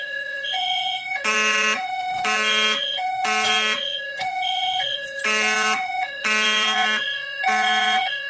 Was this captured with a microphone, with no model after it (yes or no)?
no